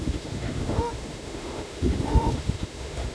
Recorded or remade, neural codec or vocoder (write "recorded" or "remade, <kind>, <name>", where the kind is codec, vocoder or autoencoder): remade, autoencoder, DAC-VAE